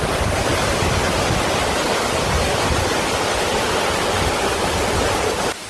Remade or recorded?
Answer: recorded